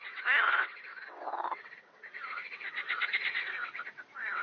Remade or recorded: remade